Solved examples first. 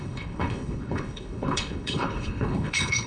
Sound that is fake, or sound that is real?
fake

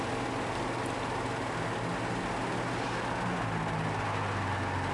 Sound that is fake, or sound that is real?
real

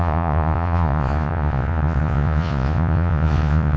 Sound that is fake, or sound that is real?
fake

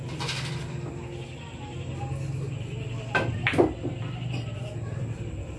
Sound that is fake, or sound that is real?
real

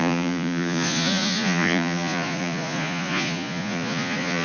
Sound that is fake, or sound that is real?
fake